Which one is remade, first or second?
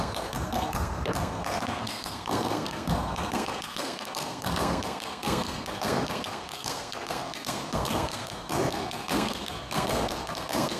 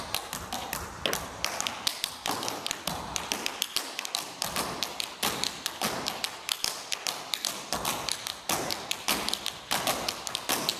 first